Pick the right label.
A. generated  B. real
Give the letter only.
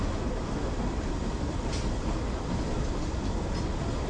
B